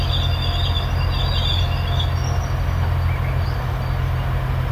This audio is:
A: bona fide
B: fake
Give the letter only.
A